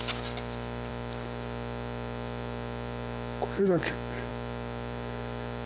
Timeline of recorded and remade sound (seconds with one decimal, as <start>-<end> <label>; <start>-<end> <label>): 0.0-5.7 recorded